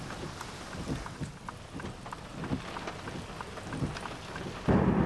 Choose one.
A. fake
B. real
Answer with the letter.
B